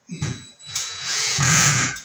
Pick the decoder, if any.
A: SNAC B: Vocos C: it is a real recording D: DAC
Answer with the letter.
B